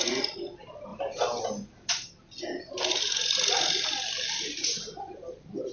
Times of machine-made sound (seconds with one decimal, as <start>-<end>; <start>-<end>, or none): none